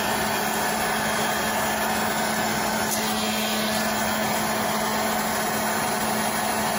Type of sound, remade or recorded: recorded